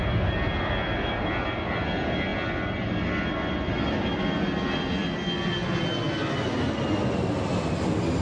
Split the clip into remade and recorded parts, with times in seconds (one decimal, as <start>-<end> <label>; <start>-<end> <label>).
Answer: 0.0-8.2 recorded